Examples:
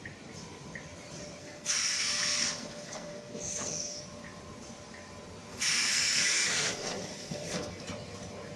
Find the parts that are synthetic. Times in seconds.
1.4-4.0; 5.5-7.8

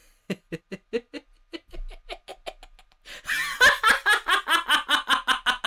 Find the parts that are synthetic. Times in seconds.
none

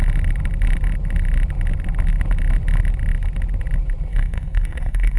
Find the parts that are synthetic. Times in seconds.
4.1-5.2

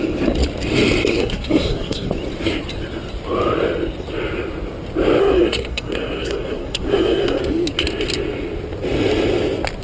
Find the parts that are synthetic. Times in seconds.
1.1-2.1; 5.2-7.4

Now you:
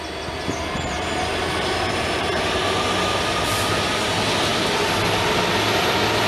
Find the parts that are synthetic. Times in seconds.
none